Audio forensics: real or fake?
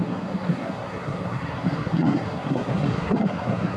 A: fake